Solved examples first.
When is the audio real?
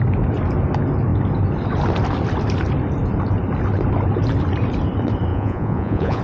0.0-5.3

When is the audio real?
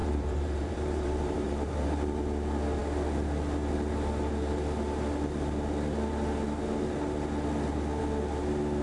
2.2-8.8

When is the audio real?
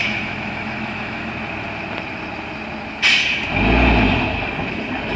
1.3-5.2